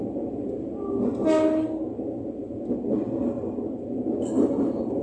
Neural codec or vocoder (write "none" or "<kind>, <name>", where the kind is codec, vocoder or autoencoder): none